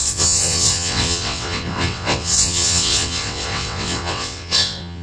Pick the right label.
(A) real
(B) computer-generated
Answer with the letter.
B